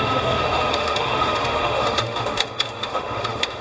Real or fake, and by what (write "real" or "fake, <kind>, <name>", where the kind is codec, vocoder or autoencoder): fake, autoencoder, DAC-VAE